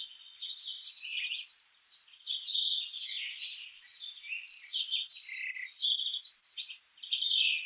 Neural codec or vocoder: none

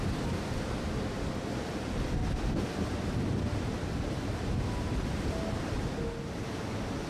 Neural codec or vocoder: none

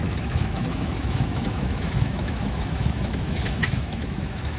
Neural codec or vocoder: autoencoder, DAC-VAE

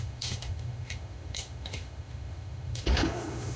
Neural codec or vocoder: autoencoder, DAC-VAE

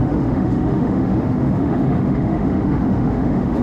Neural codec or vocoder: autoencoder, DAC-VAE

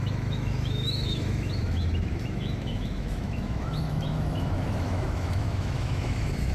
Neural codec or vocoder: autoencoder, DAC-VAE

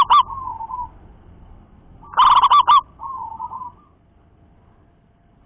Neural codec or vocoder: none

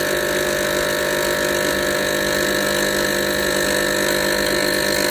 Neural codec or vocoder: none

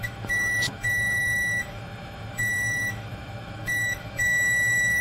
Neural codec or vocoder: autoencoder, DAC-VAE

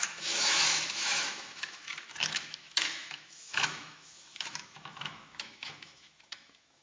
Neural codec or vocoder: autoencoder, DAC-VAE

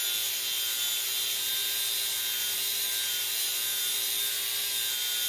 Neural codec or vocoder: none